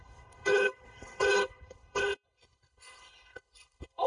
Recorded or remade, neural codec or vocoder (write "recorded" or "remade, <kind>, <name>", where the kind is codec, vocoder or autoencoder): remade, codec, HILCodec